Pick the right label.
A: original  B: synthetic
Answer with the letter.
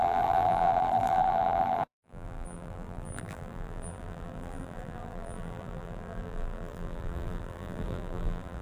B